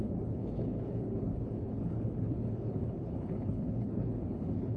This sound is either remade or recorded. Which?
remade